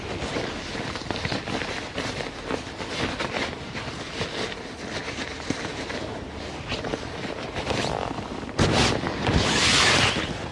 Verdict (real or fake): real